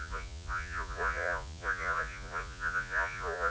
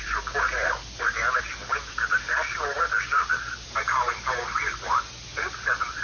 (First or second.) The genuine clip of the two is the second